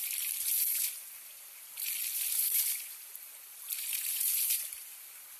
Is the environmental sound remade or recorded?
recorded